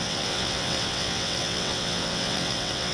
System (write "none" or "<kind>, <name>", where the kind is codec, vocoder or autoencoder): vocoder, WaveNeXt